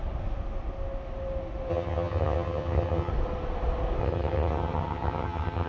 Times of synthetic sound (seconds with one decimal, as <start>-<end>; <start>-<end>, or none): 1.7-3.1; 4.0-5.7